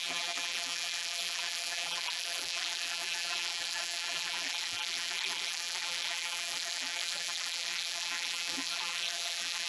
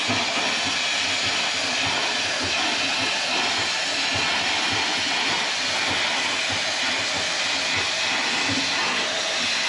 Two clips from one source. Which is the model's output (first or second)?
first